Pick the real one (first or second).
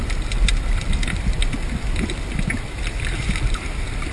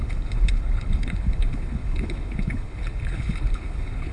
first